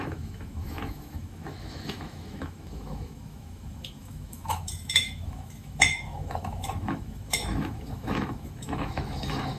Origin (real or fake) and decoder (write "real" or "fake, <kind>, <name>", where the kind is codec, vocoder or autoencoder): fake, autoencoder, DAC-VAE